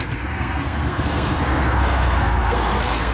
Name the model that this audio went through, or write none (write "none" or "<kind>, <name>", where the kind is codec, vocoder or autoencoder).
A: codec, SNAC